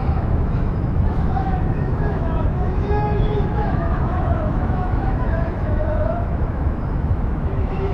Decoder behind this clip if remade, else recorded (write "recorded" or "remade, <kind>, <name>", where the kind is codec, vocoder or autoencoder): remade, autoencoder, DAC-VAE